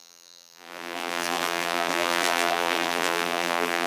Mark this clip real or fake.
fake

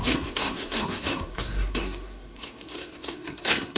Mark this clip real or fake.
fake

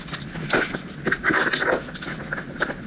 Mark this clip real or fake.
real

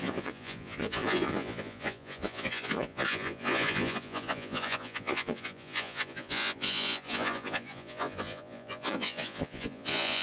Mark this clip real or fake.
fake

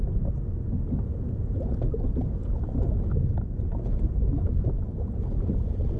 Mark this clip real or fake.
real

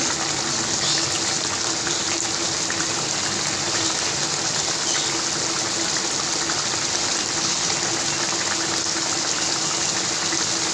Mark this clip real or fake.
real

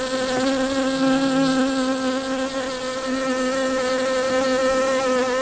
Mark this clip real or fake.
real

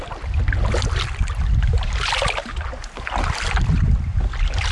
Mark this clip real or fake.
real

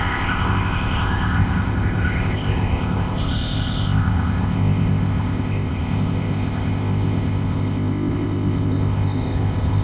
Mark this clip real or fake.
fake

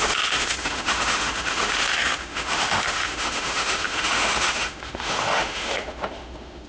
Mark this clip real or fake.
fake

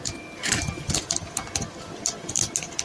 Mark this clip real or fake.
real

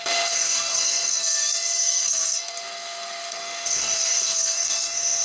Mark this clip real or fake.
fake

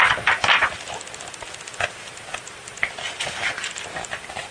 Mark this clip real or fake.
real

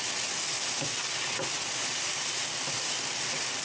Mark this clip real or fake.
real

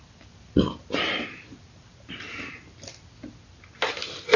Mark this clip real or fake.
real